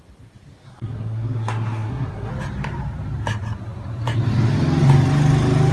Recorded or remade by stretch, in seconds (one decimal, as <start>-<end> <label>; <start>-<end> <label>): 0.0-0.6 recorded; 0.6-2.3 remade; 2.3-5.7 recorded